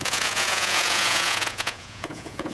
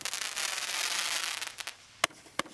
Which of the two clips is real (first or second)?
second